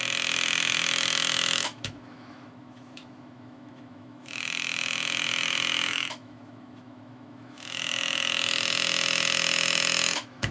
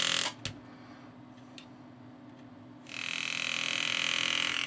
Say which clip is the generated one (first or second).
first